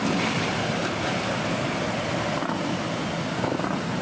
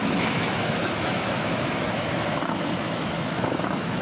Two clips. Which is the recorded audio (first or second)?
first